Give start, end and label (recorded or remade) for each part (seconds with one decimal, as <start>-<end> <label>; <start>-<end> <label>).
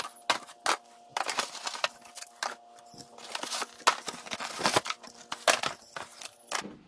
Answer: 0.0-6.9 recorded